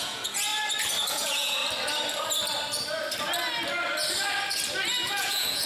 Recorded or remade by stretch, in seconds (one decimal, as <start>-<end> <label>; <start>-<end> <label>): 0.0-0.5 remade; 0.5-1.1 recorded; 1.1-1.6 remade; 1.6-5.0 recorded; 5.0-5.7 remade